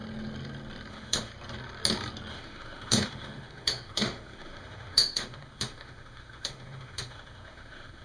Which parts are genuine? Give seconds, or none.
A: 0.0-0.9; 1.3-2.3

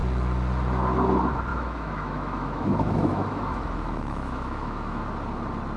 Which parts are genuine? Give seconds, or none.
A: 0.0-1.5; 5.0-5.8

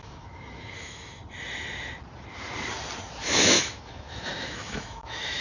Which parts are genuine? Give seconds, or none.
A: 1.2-3.2

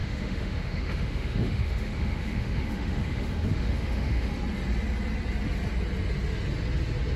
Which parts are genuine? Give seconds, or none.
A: 4.3-7.2